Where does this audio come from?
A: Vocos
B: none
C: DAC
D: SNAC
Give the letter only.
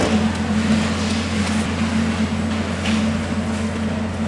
B